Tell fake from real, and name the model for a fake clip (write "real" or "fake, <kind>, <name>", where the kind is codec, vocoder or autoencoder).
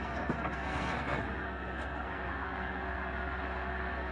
fake, codec, SNAC